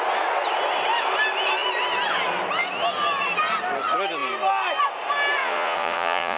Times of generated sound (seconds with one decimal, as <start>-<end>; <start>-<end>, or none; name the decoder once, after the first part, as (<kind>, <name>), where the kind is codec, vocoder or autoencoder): 5.4-6.4 (vocoder, Vocos)